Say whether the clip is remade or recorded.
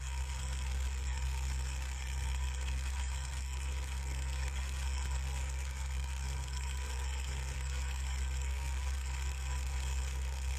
remade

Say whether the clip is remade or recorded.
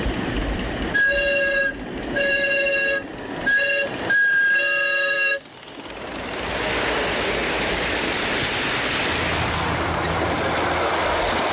recorded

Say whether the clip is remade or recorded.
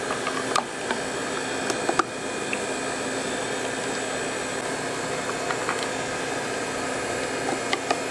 recorded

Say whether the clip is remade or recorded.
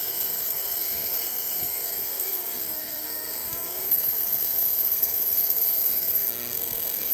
remade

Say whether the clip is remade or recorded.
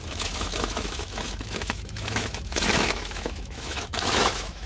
remade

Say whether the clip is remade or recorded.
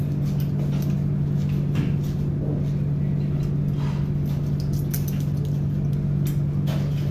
recorded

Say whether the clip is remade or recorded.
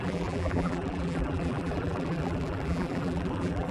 remade